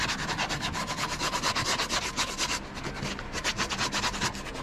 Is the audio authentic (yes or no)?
yes